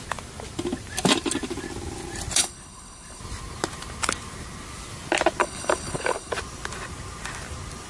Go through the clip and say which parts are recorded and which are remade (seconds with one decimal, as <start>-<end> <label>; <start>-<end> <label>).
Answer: 0.0-2.4 recorded; 2.4-3.2 remade; 3.2-5.4 recorded; 5.4-6.3 remade; 6.3-7.9 recorded